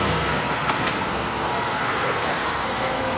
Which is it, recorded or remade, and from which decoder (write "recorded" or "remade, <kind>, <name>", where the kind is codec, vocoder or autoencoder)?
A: remade, codec, SNAC